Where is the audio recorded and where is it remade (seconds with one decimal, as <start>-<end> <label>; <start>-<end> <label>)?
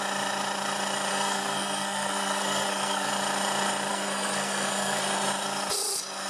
0.0-1.1 recorded; 1.1-3.1 remade; 3.1-3.9 recorded; 3.9-5.0 remade; 5.0-6.3 recorded